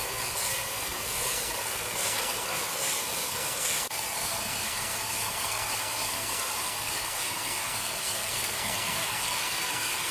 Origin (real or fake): fake